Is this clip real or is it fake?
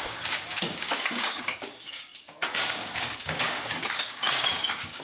fake